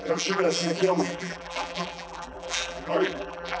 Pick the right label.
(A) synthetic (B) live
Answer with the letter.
A